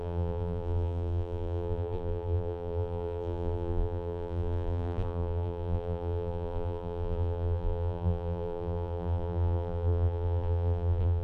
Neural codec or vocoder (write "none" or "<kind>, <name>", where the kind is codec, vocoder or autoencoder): vocoder, BigVGAN v2